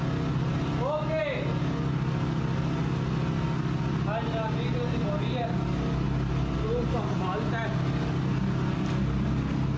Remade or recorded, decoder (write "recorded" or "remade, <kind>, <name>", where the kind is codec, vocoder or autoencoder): recorded